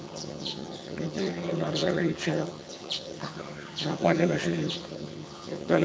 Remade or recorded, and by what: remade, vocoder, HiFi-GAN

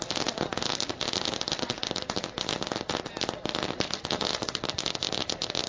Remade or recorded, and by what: recorded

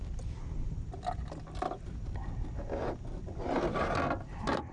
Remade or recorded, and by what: recorded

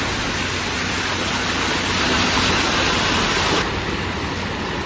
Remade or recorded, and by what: recorded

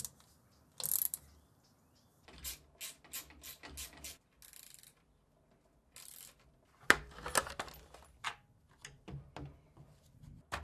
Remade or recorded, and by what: recorded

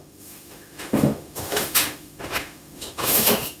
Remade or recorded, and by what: remade, autoencoder, DAC-VAE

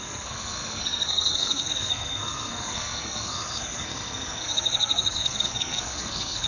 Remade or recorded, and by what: remade, codec, SNAC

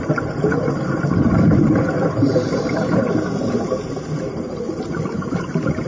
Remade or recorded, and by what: recorded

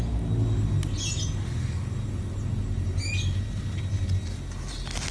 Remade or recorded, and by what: recorded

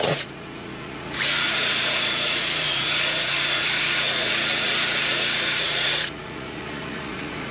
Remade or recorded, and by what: remade, vocoder, Vocos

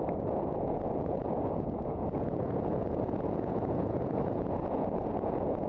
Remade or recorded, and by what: remade, vocoder, Vocos